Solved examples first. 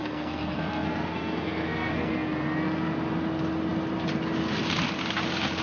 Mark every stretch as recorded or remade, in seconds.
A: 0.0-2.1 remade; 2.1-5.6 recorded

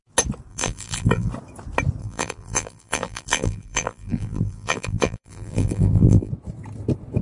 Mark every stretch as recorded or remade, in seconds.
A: 0.0-0.5 recorded; 0.5-1.3 remade; 1.3-2.0 recorded; 2.0-6.3 remade; 6.3-7.2 recorded

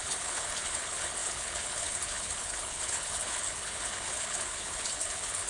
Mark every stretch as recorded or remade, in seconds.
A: 0.0-5.5 remade

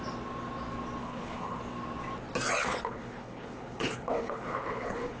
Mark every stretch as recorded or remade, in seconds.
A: 0.0-1.0 recorded; 1.0-1.6 remade; 1.6-2.6 recorded; 2.6-5.2 remade

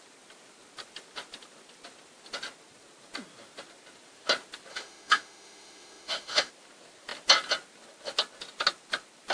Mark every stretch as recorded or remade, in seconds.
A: 0.0-4.7 recorded; 4.7-6.5 remade; 6.5-9.3 recorded